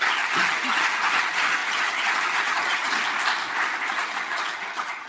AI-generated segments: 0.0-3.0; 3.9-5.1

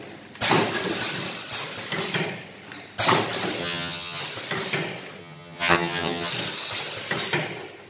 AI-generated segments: 3.6-4.2; 5.2-6.3

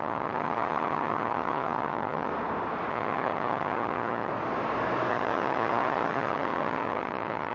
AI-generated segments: 0.0-2.3; 2.9-4.3; 5.1-7.5

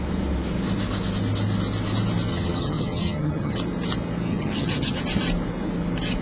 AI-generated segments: 2.3-3.6; 4.3-5.0

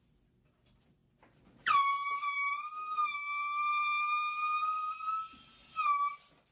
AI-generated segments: none

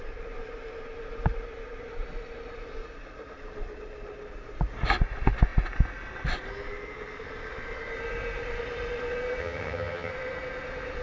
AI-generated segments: 9.4-10.1